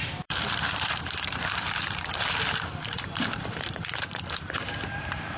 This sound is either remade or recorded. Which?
remade